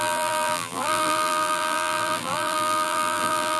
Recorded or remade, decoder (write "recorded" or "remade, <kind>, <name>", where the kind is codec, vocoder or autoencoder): remade, vocoder, BigVGAN v2